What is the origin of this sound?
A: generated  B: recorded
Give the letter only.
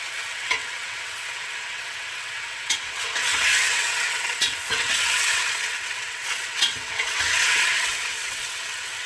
A